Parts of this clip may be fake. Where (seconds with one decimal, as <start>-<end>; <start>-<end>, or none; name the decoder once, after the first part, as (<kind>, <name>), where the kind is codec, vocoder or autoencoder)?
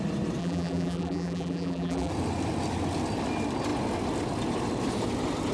0.4-2.1 (vocoder, BigVGAN v2)